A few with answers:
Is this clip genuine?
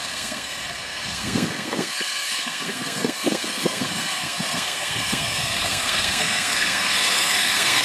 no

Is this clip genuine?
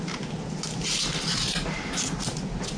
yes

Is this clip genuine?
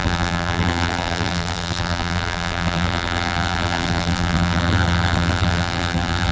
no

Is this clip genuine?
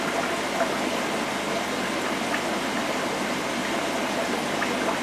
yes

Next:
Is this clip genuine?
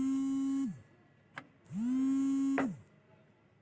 yes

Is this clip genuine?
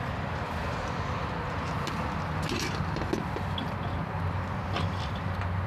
yes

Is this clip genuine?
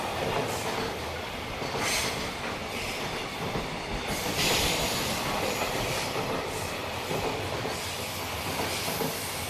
yes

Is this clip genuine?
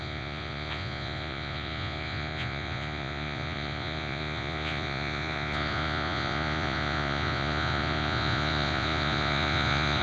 no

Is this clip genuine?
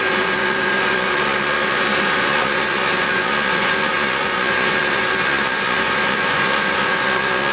no